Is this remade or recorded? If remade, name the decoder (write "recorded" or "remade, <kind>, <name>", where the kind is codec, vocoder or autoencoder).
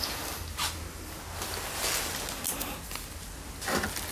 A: recorded